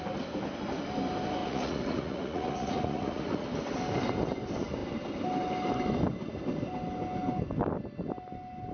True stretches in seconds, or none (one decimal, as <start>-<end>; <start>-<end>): 0.0-1.4; 3.5-8.7